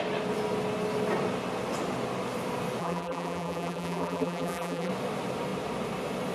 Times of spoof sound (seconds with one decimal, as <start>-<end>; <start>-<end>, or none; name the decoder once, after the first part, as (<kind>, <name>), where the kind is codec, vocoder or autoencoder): 2.8-4.9 (vocoder, BigVGAN v2)